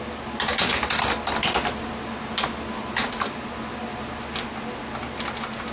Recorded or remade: recorded